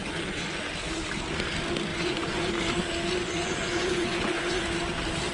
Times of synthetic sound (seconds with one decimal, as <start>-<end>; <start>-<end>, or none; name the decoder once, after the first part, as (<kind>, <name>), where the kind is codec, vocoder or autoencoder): 0.0-0.6 (vocoder, Vocos); 1.9-2.5; 3.2-4.6